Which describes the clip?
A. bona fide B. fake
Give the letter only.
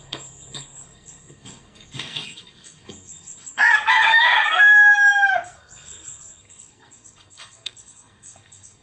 B